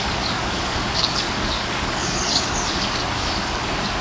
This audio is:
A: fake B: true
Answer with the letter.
A